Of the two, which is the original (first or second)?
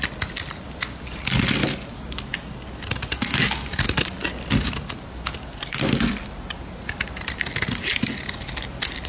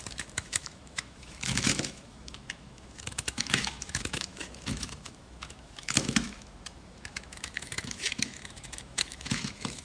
first